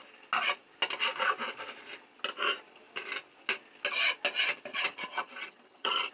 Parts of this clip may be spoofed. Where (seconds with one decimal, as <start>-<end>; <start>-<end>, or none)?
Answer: 4.7-6.1